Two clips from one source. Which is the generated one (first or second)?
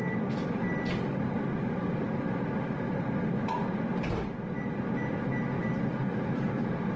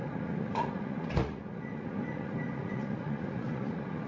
second